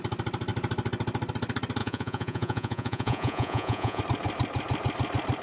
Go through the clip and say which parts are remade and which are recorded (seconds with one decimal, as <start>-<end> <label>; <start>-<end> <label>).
0.0-1.8 recorded; 1.8-4.0 remade; 4.0-5.4 recorded